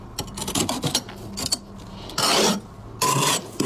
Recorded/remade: recorded